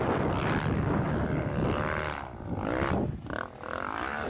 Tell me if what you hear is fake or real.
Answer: real